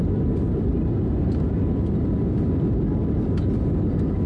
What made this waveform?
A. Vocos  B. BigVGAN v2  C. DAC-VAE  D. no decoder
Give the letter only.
D